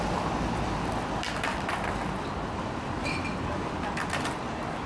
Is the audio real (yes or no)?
yes